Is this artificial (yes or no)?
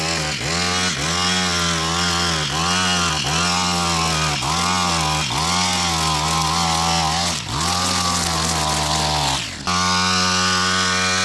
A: no